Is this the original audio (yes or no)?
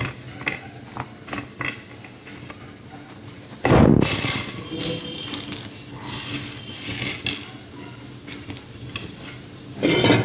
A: yes